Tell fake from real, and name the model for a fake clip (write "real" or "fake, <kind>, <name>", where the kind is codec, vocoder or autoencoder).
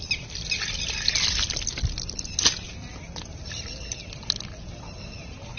real